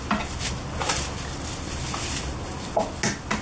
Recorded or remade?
recorded